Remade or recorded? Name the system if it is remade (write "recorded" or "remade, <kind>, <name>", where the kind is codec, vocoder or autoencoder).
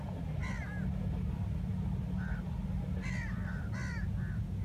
recorded